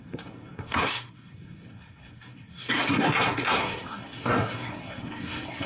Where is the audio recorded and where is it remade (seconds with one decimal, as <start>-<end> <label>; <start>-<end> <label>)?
0.0-5.7 remade